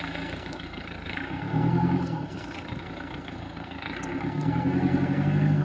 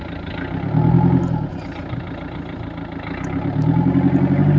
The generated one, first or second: first